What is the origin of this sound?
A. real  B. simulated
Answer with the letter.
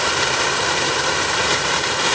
B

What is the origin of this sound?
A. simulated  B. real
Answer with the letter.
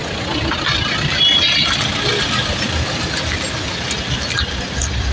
B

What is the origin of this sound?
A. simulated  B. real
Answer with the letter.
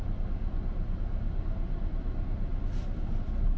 B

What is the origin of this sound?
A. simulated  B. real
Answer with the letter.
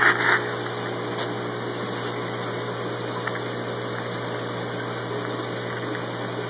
B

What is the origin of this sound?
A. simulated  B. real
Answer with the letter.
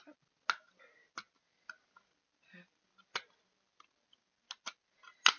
B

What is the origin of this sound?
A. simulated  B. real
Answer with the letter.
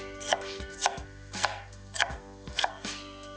A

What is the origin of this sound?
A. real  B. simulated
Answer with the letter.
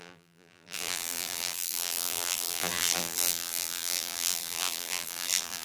B